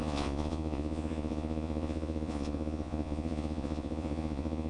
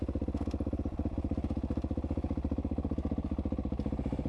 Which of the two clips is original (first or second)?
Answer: second